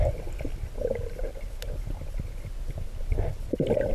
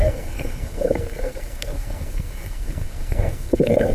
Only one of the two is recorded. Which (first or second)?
first